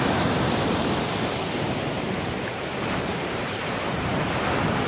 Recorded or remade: remade